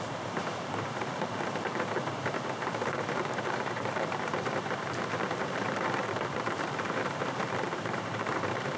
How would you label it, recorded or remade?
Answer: remade